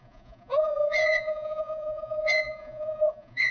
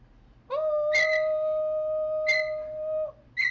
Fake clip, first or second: first